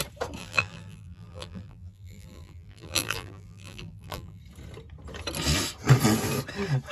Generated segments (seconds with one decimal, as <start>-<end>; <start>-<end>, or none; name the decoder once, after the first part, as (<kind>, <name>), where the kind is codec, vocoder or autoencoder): 0.4-4.4 (vocoder, BigVGAN v2)